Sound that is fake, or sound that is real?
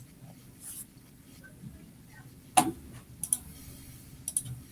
real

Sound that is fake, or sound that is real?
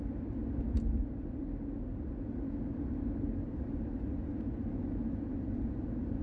real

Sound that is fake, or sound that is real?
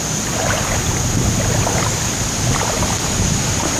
real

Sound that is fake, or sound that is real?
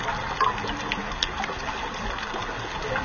real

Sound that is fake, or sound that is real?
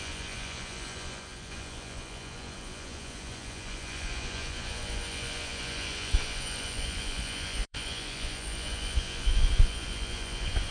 fake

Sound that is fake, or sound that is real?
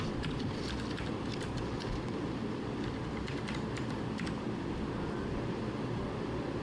real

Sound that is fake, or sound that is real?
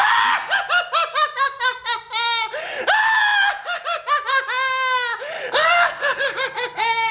real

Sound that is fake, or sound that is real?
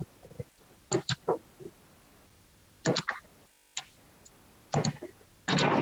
real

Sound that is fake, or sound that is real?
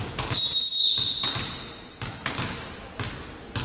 real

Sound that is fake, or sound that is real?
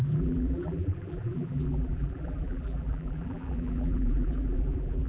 fake